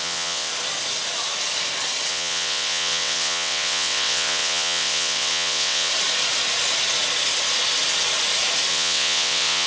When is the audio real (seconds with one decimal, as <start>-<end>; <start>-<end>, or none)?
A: 0.5-2.1; 5.9-8.7